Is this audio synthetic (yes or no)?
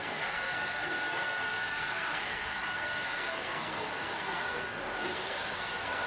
yes